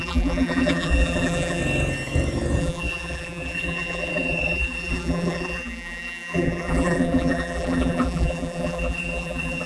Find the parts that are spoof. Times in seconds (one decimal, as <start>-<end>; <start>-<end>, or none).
0.0-1.6; 2.6-9.7